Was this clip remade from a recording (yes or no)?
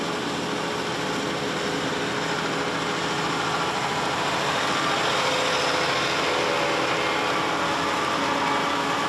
no